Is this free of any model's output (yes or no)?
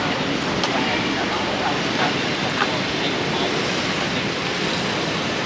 no